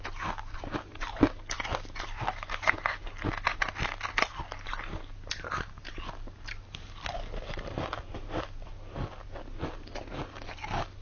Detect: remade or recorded recorded